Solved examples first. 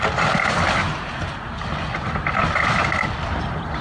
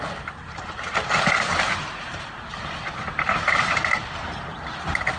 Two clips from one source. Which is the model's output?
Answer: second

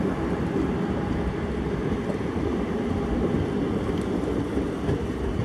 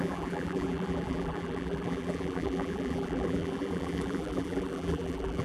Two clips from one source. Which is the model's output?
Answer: second